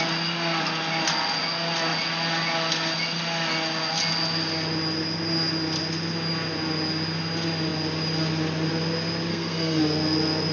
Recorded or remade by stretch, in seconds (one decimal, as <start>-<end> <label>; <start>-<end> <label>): 0.0-9.3 recorded; 9.3-9.8 remade; 9.8-10.5 recorded